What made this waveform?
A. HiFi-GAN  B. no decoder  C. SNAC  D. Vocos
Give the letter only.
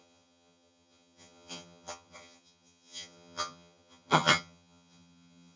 A